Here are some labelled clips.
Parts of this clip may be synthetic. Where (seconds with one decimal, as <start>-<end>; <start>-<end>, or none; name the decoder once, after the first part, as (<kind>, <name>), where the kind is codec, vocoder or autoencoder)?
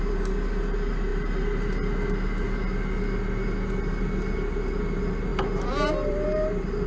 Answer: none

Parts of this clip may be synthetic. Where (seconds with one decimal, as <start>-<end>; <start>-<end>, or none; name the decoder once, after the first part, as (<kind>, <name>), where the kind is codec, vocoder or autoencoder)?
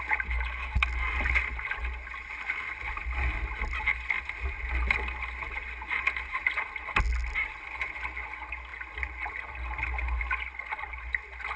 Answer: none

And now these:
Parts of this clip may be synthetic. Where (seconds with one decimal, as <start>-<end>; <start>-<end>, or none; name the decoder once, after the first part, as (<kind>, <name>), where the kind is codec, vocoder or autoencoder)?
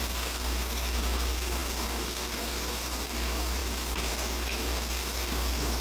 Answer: 0.0-5.8 (codec, DAC)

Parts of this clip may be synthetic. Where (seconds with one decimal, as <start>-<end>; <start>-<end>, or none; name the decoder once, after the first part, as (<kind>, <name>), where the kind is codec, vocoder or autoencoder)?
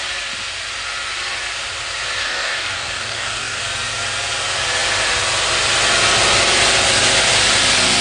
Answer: 2.2-3.6 (codec, DAC)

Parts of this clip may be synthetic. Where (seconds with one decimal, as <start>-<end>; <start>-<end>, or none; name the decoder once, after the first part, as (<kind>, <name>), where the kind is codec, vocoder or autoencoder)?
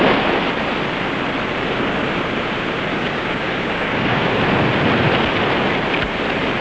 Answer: 2.9-4.3 (codec, DAC)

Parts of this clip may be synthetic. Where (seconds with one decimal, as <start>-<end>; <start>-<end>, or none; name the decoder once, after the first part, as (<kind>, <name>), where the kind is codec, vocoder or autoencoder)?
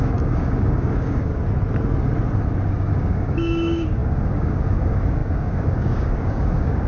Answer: 0.0-1.3 (codec, DAC); 2.7-6.9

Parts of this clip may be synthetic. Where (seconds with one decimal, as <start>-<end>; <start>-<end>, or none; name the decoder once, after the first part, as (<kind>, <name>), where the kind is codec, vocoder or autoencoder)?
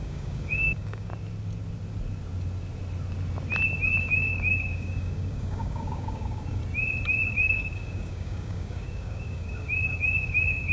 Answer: 0.0-1.1 (codec, DAC); 4.0-6.6; 7.3-10.7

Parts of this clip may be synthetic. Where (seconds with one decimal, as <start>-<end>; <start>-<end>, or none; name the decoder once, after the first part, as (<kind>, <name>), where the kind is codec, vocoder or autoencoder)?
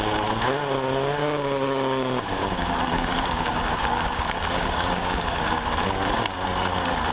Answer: 1.2-5.5 (codec, DAC)